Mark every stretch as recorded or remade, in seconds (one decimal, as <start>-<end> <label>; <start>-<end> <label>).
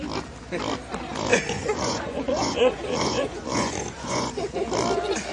0.0-1.3 recorded; 1.3-4.3 remade; 4.3-5.3 recorded